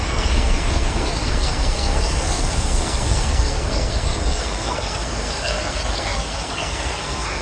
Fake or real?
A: fake